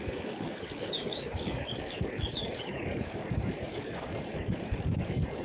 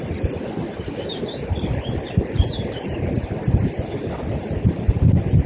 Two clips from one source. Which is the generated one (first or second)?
first